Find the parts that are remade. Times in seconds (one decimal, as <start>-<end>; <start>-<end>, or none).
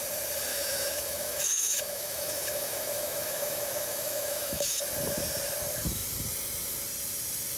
0.5-4.8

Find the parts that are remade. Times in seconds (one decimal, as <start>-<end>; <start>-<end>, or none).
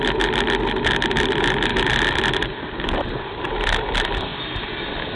none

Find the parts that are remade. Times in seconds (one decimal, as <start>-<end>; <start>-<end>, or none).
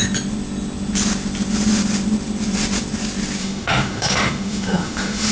3.4-5.3